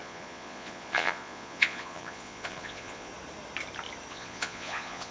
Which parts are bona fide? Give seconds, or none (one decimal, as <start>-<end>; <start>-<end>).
3.1-4.1